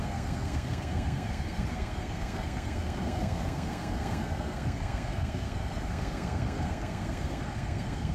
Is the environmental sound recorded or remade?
remade